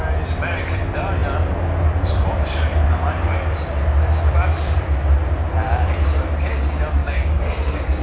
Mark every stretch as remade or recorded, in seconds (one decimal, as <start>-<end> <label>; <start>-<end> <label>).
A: 0.0-7.0 recorded; 7.0-8.0 remade

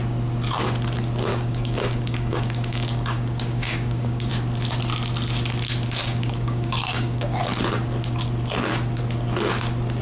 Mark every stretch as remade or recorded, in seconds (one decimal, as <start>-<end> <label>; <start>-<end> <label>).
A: 0.0-1.3 recorded; 1.3-4.3 remade; 4.3-6.0 recorded; 6.0-7.4 remade; 7.4-10.0 recorded

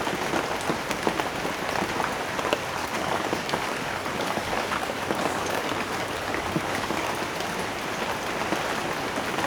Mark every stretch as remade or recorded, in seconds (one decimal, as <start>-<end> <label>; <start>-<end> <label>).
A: 0.0-2.8 recorded; 2.8-7.1 remade; 7.1-9.5 recorded

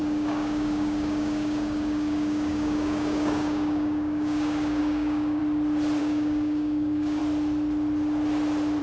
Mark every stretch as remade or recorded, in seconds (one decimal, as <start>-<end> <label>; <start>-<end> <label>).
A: 0.0-5.4 remade; 5.4-6.0 recorded; 6.0-7.2 remade; 7.2-8.8 recorded

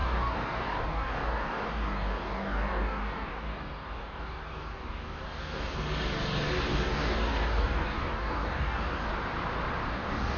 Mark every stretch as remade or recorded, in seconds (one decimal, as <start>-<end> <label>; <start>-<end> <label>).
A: 0.0-5.8 remade; 5.8-6.7 recorded; 6.7-9.1 remade; 9.1-9.9 recorded; 9.9-10.4 remade

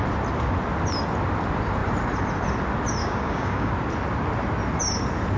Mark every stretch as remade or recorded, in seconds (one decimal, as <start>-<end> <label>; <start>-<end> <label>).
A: 0.0-3.0 recorded; 3.0-3.7 remade; 3.7-5.4 recorded